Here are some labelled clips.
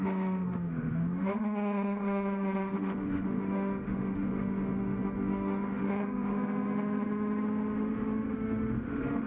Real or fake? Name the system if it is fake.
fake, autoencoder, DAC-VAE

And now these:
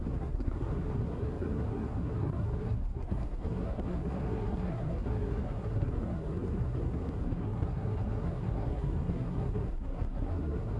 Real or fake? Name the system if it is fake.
fake, codec, SNAC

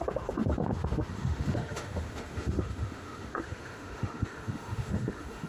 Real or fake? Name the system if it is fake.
fake, autoencoder, DAC-VAE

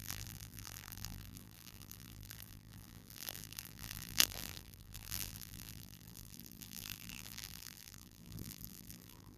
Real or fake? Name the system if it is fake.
fake, vocoder, BigVGAN v2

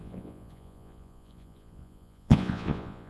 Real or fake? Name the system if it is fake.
fake, vocoder, Vocos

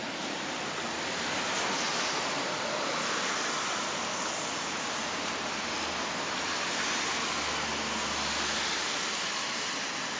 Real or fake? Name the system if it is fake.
real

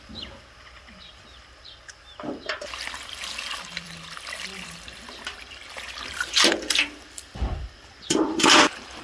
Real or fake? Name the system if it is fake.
fake, vocoder, BigVGAN v2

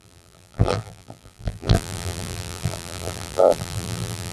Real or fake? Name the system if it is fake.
fake, vocoder, BigVGAN v2